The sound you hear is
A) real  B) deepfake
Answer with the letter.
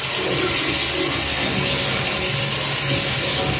A